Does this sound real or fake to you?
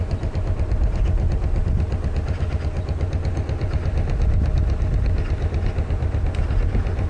real